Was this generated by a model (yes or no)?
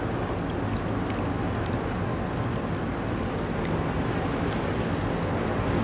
no